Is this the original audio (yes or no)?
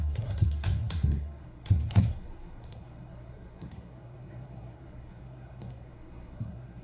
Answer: no